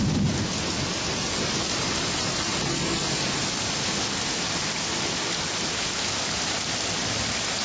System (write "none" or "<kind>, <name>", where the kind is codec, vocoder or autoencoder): none